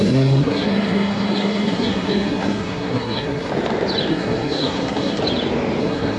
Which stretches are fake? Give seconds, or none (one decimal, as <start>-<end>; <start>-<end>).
0.0-3.5; 4.1-5.2; 5.8-6.2